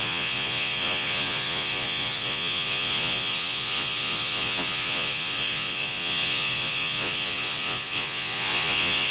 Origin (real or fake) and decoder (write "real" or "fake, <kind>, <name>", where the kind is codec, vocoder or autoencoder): fake, vocoder, Vocos